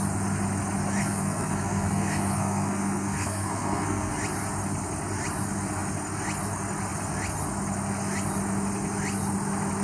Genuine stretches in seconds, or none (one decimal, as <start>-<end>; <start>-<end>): 0.0-1.0; 4.1-9.8